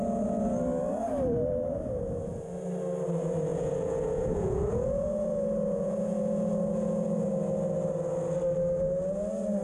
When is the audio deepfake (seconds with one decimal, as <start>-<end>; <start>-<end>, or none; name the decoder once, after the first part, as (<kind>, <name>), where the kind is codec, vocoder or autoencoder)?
3.5-7.3 (vocoder, Vocos)